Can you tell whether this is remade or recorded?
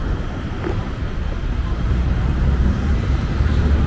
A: remade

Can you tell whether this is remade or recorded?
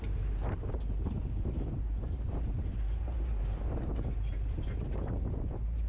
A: remade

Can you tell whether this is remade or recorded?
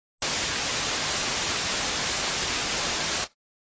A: recorded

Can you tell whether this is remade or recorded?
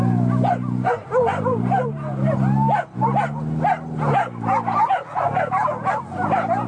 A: recorded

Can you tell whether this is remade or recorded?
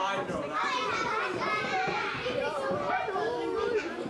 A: recorded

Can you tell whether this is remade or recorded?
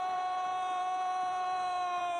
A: remade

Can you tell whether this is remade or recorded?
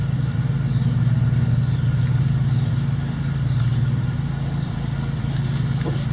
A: remade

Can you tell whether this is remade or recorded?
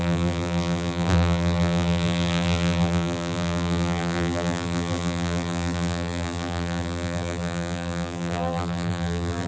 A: remade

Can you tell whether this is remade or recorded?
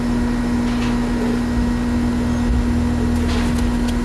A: recorded